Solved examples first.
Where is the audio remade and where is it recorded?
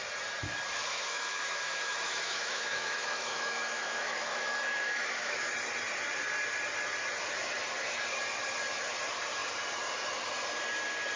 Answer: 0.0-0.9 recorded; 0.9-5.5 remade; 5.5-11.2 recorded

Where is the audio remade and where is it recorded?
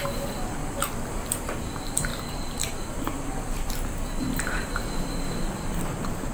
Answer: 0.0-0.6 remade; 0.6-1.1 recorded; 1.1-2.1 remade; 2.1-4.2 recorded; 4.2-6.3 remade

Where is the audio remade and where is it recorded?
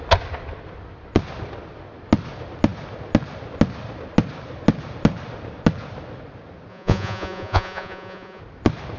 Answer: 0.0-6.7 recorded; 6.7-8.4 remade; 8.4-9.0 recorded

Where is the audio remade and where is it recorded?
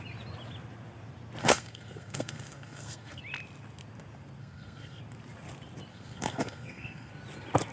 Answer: 0.0-1.4 recorded; 1.4-3.2 remade; 3.2-4.4 recorded; 4.4-5.0 remade; 5.0-5.9 recorded; 5.9-7.1 remade; 7.1-7.7 recorded